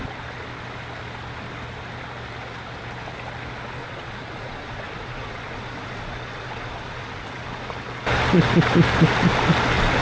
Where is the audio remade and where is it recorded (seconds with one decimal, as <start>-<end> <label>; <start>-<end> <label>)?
0.0-3.8 recorded; 3.8-7.4 remade; 7.4-10.0 recorded